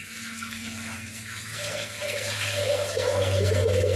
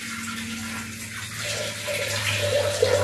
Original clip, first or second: second